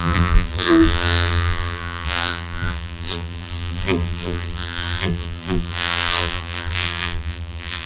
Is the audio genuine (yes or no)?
no